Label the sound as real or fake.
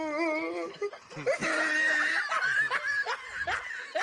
real